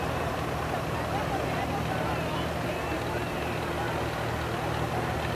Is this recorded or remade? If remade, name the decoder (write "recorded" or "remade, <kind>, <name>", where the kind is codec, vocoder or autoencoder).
recorded